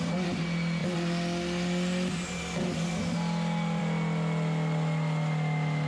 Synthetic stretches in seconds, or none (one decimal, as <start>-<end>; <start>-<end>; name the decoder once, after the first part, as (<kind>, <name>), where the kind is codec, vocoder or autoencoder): none